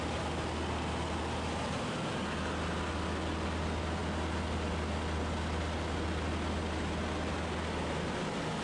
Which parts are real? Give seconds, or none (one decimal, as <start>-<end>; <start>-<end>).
0.0-8.6